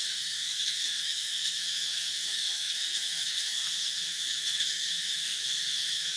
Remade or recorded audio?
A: remade